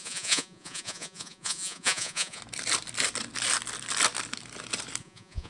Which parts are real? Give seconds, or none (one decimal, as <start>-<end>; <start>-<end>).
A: 2.4-5.0